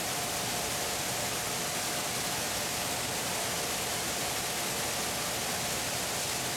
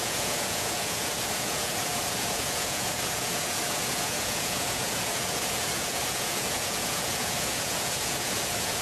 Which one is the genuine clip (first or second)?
first